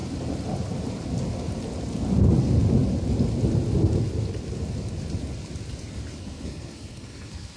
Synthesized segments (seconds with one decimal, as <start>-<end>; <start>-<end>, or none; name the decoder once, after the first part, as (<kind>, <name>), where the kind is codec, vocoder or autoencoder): 6.2-7.6 (codec, SNAC)